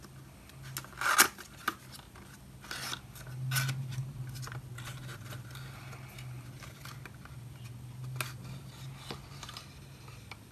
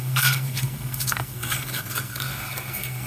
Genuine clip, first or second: first